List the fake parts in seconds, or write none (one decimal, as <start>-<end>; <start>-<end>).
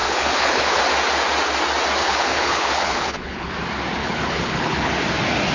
0.0-0.8; 2.0-3.5; 4.0-4.9